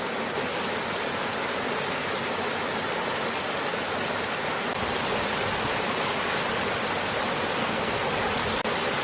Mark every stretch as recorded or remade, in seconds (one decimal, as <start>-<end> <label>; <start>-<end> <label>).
0.0-7.6 recorded; 7.6-8.1 remade; 8.1-9.0 recorded